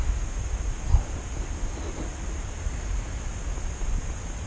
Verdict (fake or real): real